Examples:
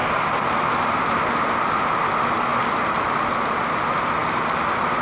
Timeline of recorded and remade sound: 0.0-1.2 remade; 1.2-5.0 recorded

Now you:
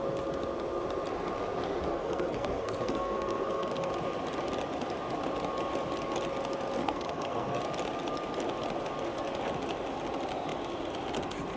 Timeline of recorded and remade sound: 0.0-1.9 recorded; 1.9-3.9 remade; 3.9-6.8 recorded; 6.8-7.6 remade; 7.6-11.6 recorded

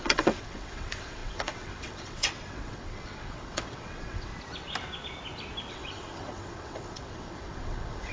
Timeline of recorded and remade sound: 0.0-4.3 remade; 4.3-5.7 recorded; 5.7-8.1 remade